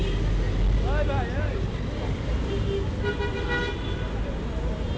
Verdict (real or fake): real